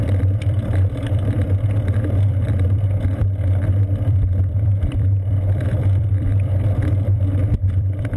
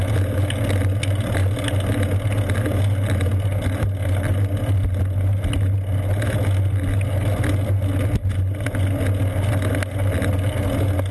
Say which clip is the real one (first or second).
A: second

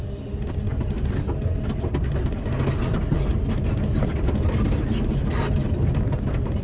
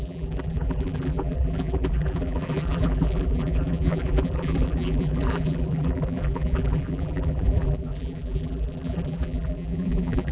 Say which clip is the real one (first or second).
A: first